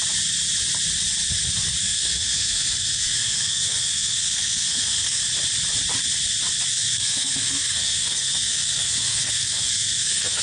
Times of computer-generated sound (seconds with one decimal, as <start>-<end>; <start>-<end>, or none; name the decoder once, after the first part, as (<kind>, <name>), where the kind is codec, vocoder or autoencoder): 1.8-5.2 (codec, SNAC); 6.7-10.4